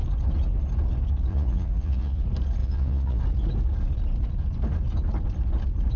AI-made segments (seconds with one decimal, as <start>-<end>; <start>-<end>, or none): 1.3-2.2; 2.6-3.2